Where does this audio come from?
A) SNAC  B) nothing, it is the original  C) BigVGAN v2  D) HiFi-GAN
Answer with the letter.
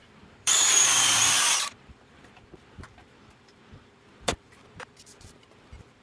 C